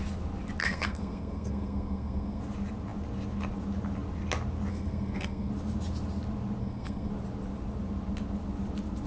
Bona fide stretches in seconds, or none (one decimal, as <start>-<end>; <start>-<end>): 0.0-0.6; 2.4-4.7; 5.5-6.6; 7.1-9.1